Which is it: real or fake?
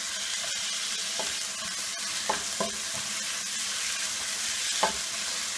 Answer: real